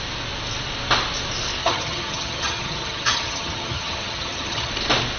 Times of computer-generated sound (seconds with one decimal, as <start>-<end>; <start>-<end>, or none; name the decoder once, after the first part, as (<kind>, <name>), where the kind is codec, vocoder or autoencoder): 1.6-4.7 (vocoder, HiFi-GAN)